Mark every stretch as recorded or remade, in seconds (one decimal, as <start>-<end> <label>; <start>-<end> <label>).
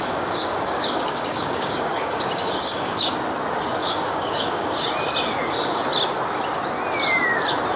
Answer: 0.0-3.1 remade; 3.1-3.8 recorded; 3.8-4.8 remade; 4.8-7.8 recorded